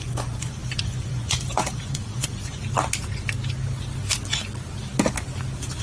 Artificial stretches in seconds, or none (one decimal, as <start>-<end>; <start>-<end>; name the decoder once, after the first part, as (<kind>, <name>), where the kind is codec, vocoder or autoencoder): 0.0-2.6 (vocoder, Vocos)